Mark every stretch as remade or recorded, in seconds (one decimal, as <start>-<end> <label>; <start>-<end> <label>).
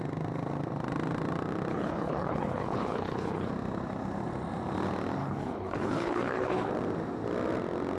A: 0.0-1.7 recorded; 1.7-3.5 remade; 3.5-5.2 recorded; 5.2-6.7 remade; 6.7-8.0 recorded